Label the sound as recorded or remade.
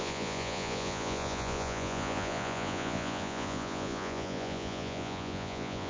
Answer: remade